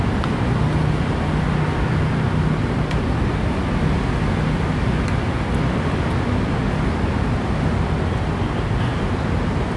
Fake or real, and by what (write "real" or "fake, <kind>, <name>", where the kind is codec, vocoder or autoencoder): real